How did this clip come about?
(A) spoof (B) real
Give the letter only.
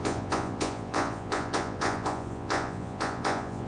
A